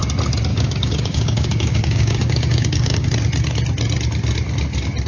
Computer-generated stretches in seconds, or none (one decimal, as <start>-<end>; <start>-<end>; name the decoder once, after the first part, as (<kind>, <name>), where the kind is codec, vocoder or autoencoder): 0.5-3.1 (codec, DAC)